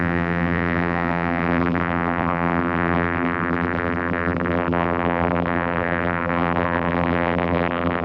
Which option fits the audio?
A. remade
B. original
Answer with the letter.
A